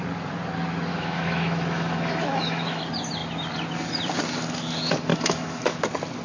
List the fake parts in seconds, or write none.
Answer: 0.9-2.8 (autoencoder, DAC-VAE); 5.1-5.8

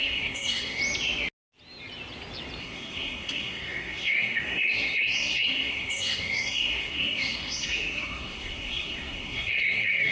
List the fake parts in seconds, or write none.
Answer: 0.0-0.8 (codec, SNAC); 2.6-10.1

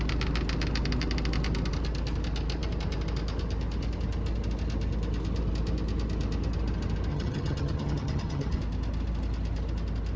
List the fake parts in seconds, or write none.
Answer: 7.1-8.6 (vocoder, HiFi-GAN)